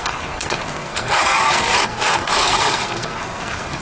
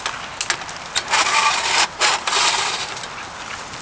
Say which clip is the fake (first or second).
first